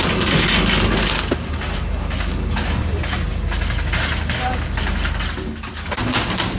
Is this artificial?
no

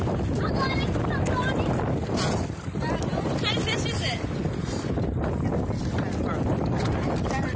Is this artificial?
no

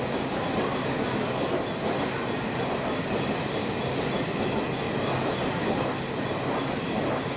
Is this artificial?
no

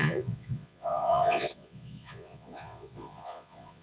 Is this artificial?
yes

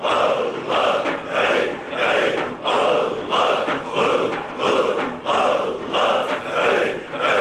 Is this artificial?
no